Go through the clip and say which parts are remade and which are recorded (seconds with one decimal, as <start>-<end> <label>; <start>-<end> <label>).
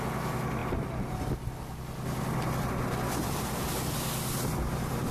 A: 0.0-5.1 recorded